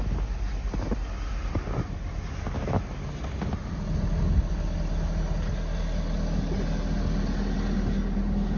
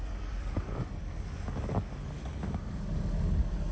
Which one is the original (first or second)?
first